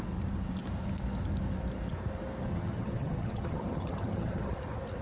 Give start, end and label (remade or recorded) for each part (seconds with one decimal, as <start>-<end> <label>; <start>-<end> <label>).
0.0-2.5 recorded; 2.5-4.5 remade; 4.5-5.0 recorded